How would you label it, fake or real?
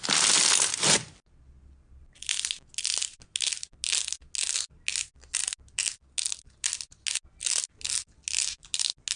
real